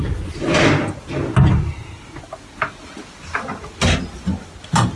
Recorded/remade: recorded